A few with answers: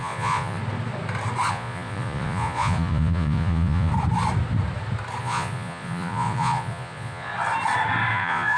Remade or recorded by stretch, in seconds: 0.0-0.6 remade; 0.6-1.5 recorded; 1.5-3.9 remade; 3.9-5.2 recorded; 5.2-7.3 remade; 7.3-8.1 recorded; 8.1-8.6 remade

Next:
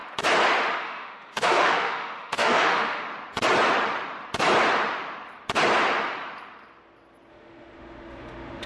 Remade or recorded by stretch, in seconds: 0.0-0.8 recorded; 0.8-3.1 remade; 3.1-7.3 recorded; 7.3-8.7 remade

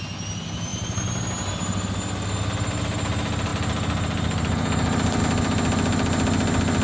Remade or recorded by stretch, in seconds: 0.0-6.8 recorded